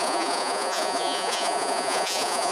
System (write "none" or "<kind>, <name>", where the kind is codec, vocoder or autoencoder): vocoder, Vocos